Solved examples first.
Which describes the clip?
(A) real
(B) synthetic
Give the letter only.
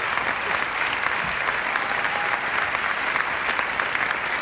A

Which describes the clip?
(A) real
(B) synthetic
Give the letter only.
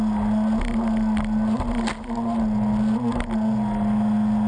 A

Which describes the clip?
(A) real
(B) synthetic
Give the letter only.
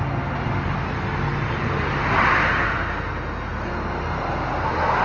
A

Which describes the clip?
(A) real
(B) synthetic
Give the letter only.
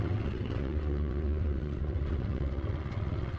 B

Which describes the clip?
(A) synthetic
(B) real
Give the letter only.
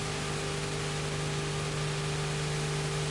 B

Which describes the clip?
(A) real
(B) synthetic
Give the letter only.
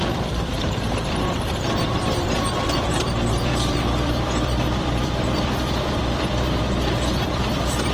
B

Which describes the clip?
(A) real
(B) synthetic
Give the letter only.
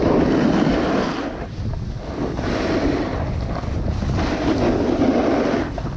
A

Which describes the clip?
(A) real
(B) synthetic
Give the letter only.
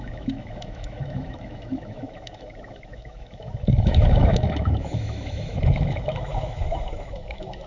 B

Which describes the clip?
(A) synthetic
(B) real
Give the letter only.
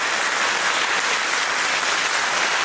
B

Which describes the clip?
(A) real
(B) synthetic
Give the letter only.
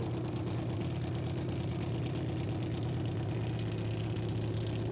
A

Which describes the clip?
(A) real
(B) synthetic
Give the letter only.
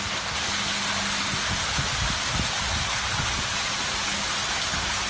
A